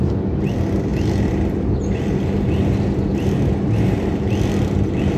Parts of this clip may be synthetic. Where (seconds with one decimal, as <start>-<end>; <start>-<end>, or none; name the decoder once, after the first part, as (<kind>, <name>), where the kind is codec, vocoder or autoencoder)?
3.1-4.2 (vocoder, BigVGAN v2)